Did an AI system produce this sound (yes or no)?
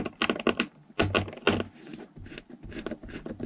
no